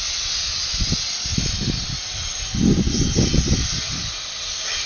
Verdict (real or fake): fake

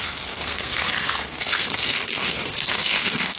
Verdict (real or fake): fake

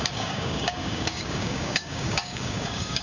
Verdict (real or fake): fake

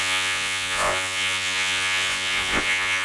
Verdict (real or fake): fake